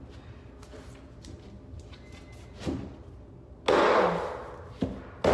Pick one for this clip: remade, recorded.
recorded